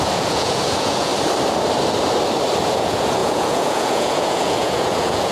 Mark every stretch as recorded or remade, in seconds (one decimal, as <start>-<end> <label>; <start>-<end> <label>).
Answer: 0.0-1.1 remade; 1.1-2.7 recorded; 2.7-5.3 remade